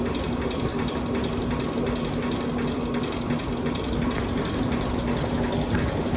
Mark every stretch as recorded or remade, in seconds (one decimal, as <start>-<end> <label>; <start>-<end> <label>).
0.0-6.2 recorded